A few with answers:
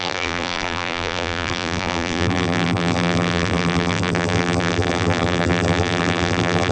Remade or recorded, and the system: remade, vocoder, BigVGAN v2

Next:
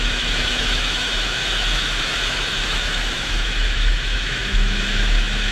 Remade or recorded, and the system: remade, autoencoder, DAC-VAE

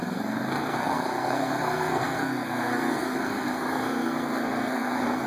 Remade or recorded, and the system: remade, codec, SNAC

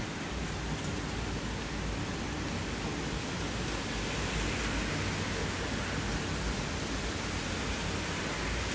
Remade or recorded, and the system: recorded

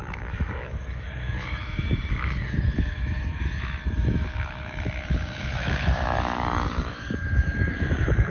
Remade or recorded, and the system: remade, autoencoder, DAC-VAE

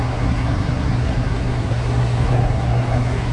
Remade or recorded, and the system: remade, codec, SNAC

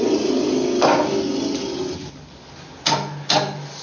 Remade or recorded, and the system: recorded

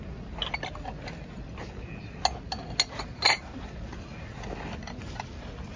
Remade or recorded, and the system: recorded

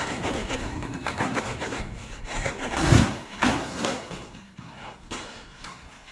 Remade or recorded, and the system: remade, codec, SNAC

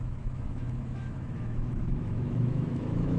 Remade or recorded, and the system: remade, autoencoder, DAC-VAE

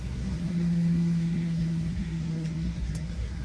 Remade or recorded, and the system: remade, codec, SNAC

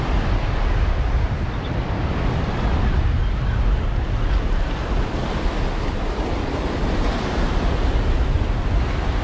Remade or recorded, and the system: recorded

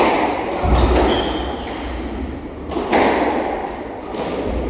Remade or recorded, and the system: recorded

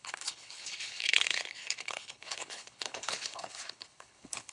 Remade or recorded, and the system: remade, codec, HILCodec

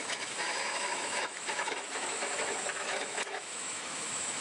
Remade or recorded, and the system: remade, autoencoder, DAC-VAE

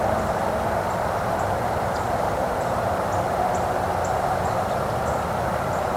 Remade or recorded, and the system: recorded